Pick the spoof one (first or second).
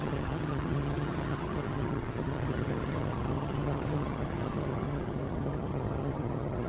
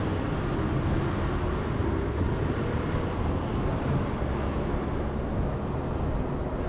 first